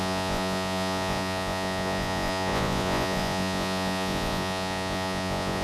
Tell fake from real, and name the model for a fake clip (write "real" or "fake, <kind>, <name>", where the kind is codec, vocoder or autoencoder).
fake, vocoder, Vocos